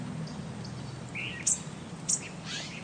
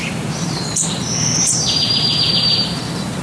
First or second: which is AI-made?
second